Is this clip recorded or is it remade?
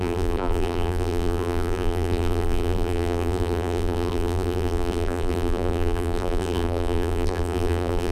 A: remade